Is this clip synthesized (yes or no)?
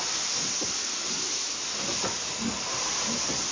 no